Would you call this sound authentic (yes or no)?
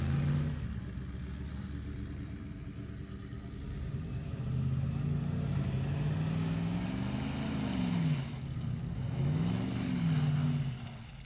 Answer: yes